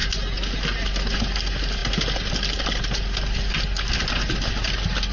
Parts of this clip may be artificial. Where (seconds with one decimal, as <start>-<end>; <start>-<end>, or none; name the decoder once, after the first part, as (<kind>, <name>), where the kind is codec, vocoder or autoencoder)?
none